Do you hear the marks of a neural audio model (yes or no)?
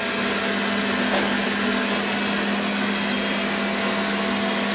no